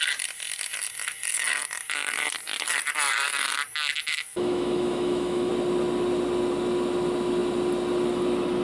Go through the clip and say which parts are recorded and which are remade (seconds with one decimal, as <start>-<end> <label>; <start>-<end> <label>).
0.0-4.1 recorded; 4.1-5.5 remade; 5.5-8.6 recorded